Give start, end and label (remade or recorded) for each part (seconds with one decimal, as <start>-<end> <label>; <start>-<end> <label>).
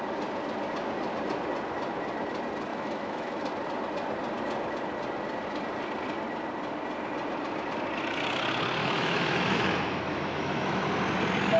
0.0-2.7 recorded; 2.7-3.5 remade; 3.5-8.8 recorded; 8.8-10.9 remade; 10.9-11.6 recorded